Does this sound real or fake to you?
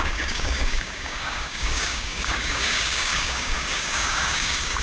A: fake